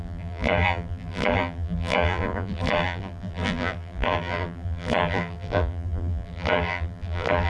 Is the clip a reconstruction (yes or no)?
yes